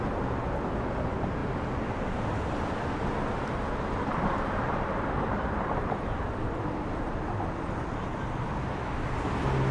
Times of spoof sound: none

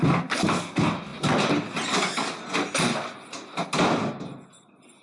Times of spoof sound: none

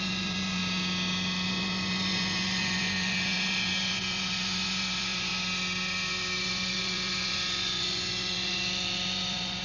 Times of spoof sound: 0.0-0.6 (vocoder, Vocos); 1.5-5.3; 6.4-9.6

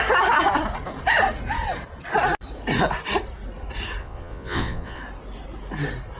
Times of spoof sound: 4.0-5.0 (vocoder, Vocos)

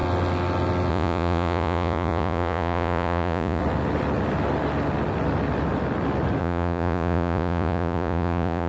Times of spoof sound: 0.9-3.6 (vocoder, Vocos); 6.4-8.7